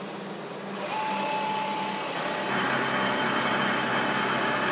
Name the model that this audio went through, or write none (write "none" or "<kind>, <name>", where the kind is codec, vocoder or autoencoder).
none